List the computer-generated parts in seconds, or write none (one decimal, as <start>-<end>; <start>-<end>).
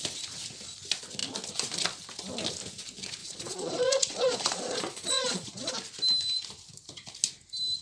3.2-5.7